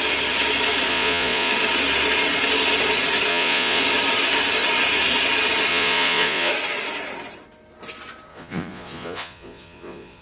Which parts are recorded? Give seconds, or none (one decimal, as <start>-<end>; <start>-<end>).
0.0-0.9; 1.5-3.3; 3.8-5.7; 6.5-8.3